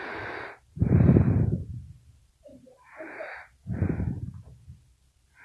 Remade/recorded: remade